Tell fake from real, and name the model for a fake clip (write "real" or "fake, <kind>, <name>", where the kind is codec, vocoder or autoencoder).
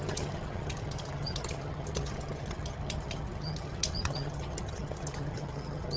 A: fake, vocoder, HiFi-GAN